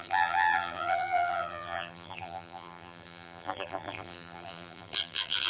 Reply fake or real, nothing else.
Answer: fake